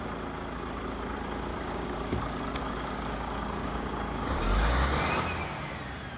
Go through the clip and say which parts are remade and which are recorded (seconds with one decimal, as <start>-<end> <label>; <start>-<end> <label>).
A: 0.0-1.5 recorded; 1.5-5.0 remade; 5.0-6.2 recorded

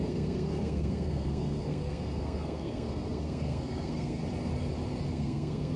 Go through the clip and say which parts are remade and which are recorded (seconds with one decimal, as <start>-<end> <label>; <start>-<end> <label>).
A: 0.0-4.2 remade; 4.2-5.1 recorded; 5.1-5.8 remade

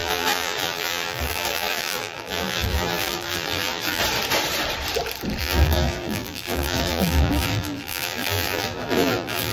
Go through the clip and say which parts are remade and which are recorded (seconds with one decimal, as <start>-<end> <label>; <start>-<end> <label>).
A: 0.0-4.0 remade; 4.0-5.4 recorded; 5.4-9.5 remade

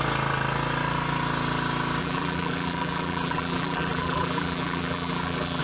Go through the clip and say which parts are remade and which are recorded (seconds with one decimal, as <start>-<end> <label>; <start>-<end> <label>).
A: 0.0-2.0 recorded; 2.0-5.6 remade